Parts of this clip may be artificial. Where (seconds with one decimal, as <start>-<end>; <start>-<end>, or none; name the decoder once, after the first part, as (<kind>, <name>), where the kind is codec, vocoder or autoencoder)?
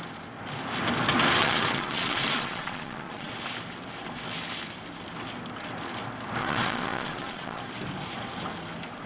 1.4-3.3 (vocoder, Vocos); 6.4-7.6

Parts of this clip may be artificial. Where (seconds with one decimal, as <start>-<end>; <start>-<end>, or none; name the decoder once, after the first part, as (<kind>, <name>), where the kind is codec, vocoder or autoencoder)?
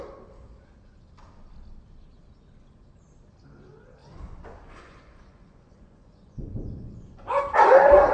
4.0-7.4 (vocoder, Vocos)